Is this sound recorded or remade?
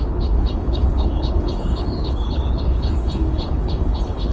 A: remade